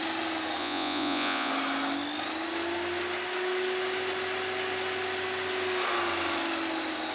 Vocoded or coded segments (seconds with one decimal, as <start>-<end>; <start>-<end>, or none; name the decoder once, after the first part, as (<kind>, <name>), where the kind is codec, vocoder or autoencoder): 0.6-1.5 (vocoder, Vocos)